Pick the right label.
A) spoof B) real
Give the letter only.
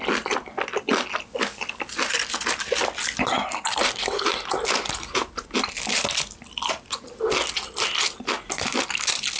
B